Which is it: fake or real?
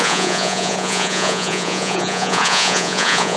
fake